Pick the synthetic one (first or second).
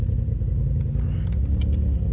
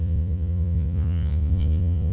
second